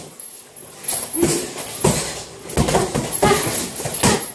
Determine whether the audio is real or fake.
real